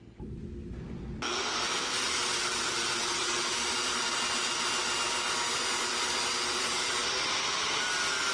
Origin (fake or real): real